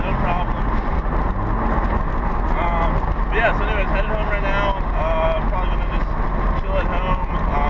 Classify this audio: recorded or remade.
recorded